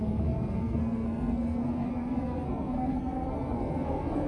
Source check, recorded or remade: remade